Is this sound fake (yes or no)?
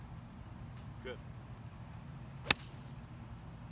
no